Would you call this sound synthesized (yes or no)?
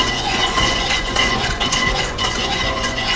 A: yes